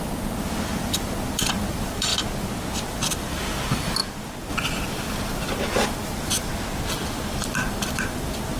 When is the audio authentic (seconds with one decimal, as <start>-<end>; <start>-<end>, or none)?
2.1-2.9; 4.0-4.5; 6.5-7.1